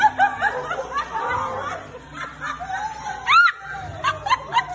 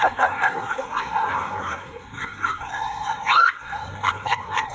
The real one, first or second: first